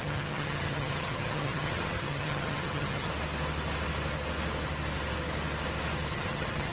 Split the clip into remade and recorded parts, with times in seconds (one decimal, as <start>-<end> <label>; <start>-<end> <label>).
0.0-3.1 remade; 3.1-6.1 recorded; 6.1-6.7 remade